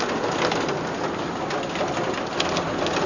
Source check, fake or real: real